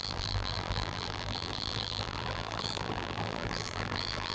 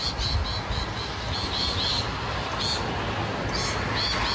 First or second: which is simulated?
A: first